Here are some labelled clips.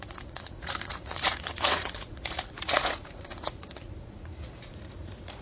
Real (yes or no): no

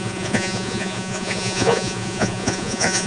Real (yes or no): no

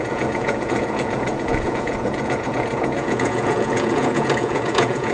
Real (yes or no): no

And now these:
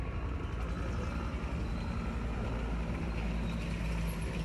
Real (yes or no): yes